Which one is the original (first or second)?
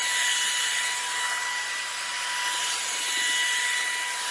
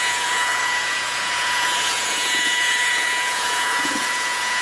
first